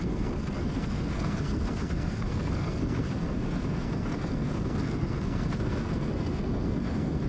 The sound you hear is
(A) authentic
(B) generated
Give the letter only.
B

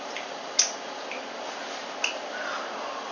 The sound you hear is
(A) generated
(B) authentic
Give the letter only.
B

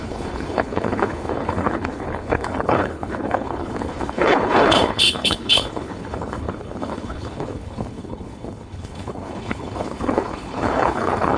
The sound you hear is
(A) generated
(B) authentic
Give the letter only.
A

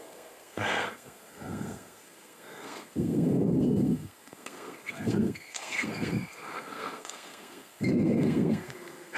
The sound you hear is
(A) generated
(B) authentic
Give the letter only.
A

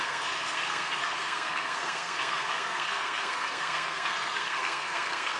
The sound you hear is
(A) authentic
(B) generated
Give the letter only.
B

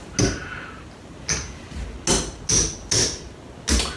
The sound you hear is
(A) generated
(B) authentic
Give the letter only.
B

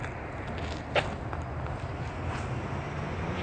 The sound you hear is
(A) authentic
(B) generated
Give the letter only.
A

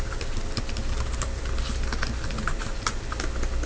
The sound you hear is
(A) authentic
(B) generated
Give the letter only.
A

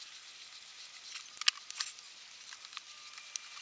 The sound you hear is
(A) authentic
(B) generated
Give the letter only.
A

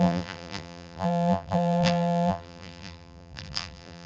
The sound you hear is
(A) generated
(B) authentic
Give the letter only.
A